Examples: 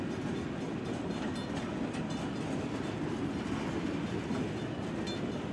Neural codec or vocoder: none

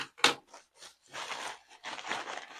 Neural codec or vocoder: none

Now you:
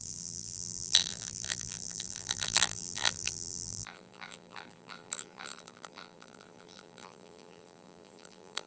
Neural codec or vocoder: vocoder, BigVGAN v2